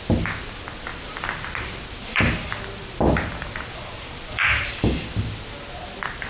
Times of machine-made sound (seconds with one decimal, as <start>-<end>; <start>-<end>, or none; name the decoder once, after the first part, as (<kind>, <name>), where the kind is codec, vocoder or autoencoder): 0.9-4.7 (vocoder, BigVGAN v2)